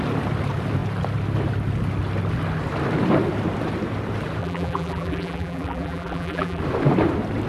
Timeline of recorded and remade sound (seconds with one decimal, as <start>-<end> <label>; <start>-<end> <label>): 0.0-4.4 recorded; 4.4-6.6 remade; 6.6-7.5 recorded